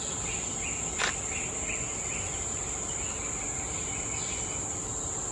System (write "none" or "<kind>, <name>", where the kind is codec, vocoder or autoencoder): none